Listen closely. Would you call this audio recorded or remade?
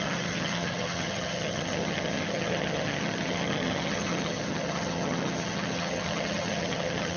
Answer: remade